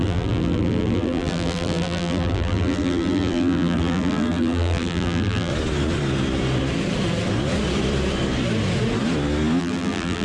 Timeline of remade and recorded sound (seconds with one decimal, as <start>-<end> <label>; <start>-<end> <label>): 0.0-5.5 remade; 5.5-9.6 recorded; 9.6-10.2 remade